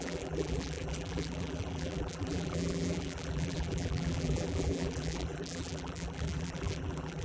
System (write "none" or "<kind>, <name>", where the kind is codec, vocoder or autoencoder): vocoder, BigVGAN v2